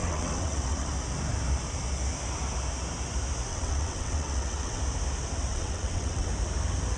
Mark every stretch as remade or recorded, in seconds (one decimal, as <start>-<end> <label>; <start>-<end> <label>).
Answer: 0.0-0.9 remade; 0.9-3.5 recorded; 3.5-4.8 remade; 4.8-5.5 recorded; 5.5-6.3 remade; 6.3-7.0 recorded